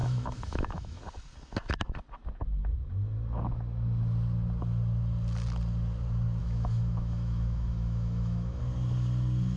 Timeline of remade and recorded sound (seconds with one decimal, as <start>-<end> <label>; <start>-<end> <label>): 0.0-1.0 remade; 1.0-6.4 recorded; 6.4-8.6 remade; 8.6-9.6 recorded